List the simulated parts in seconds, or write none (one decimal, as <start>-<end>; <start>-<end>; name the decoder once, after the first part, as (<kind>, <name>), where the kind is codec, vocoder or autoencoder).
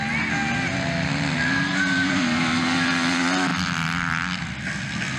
none